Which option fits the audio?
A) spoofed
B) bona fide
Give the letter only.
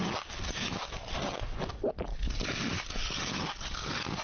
A